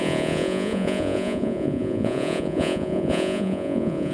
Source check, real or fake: fake